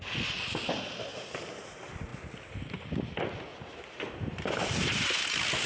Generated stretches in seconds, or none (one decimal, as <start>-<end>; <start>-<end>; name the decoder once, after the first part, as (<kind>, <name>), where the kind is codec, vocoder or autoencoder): 1.1-1.7 (vocoder, BigVGAN v2); 3.5-4.1